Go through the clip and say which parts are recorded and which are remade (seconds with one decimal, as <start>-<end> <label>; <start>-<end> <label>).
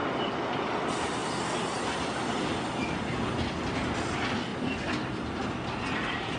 0.0-0.5 remade; 0.5-4.5 recorded; 4.5-5.1 remade; 5.1-6.4 recorded